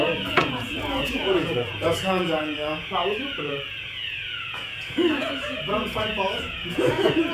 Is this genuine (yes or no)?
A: no